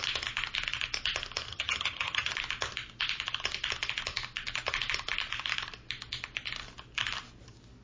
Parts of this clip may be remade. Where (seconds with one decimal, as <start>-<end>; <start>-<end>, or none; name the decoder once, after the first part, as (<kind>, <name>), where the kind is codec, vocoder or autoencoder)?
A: 1.5-2.3 (vocoder, HiFi-GAN)